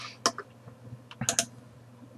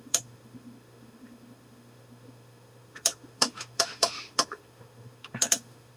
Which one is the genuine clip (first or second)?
first